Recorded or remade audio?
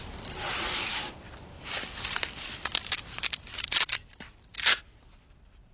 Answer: remade